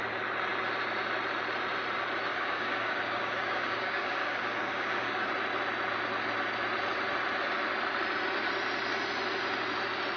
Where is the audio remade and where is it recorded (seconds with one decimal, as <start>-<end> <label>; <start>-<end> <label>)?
0.0-2.3 recorded; 2.3-5.3 remade; 5.3-10.2 recorded